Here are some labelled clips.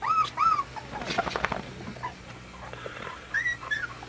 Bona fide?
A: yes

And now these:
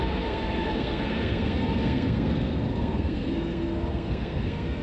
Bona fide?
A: no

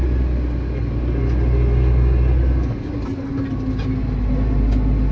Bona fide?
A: yes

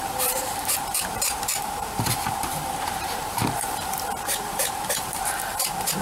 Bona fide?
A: no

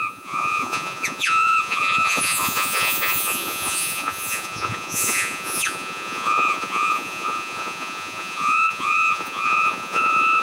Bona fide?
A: no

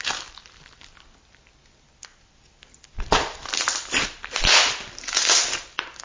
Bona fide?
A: yes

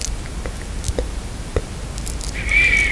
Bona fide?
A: yes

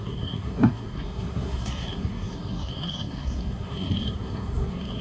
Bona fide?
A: no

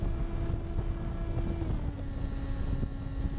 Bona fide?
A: yes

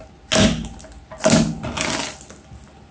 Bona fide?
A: yes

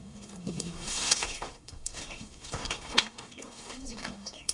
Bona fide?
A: no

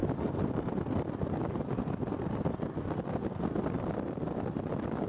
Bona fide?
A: yes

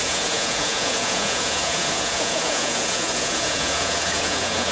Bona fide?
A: no